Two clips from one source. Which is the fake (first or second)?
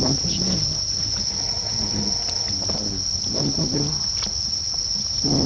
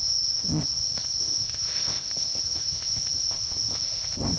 second